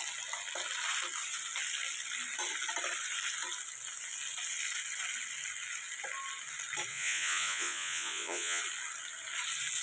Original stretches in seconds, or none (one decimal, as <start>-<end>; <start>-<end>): 0.0-6.9; 8.6-9.8